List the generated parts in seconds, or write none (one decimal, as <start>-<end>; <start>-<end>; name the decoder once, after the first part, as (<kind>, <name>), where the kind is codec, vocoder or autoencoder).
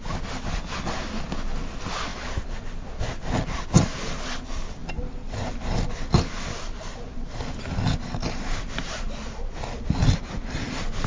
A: none